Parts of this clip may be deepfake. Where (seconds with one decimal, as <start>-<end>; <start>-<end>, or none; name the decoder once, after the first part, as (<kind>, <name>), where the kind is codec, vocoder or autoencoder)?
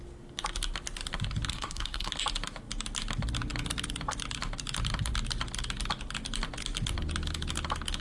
1.5-2.1 (codec, SNAC)